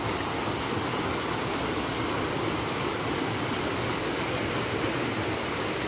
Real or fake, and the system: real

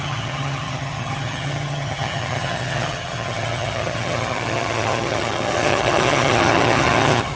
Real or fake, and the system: fake, vocoder, HiFi-GAN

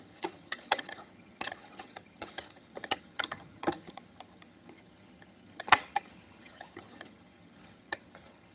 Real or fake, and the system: fake, vocoder, HiFi-GAN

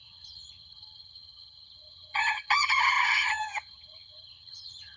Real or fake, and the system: fake, vocoder, HiFi-GAN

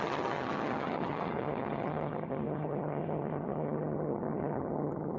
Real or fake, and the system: fake, vocoder, HiFi-GAN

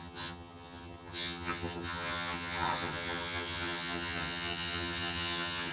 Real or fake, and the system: fake, vocoder, HiFi-GAN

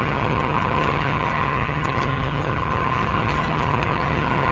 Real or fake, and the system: fake, vocoder, HiFi-GAN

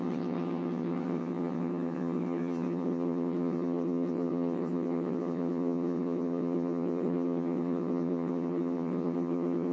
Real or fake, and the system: fake, vocoder, HiFi-GAN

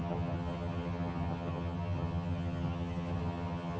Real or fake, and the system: fake, vocoder, HiFi-GAN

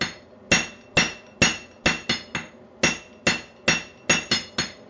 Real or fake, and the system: real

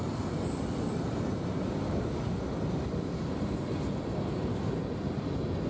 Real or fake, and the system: real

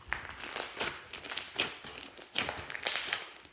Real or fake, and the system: real